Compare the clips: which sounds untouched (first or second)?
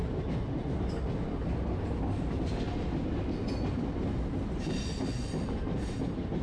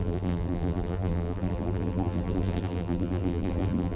first